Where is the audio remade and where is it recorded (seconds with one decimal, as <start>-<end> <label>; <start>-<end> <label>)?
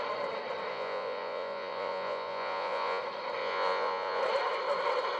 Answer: 0.0-0.7 recorded; 0.7-3.0 remade; 3.0-3.4 recorded; 3.4-4.2 remade; 4.2-5.2 recorded